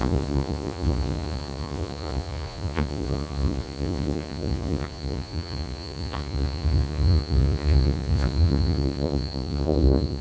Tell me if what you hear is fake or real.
fake